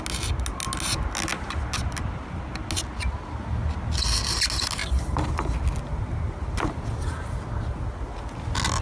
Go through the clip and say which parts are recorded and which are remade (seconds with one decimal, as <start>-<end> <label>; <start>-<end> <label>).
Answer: 0.0-8.8 recorded